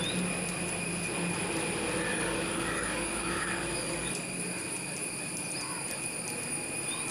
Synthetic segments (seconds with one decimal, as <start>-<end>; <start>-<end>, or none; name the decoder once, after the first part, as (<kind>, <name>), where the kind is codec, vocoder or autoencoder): 2.1-4.4 (codec, DAC)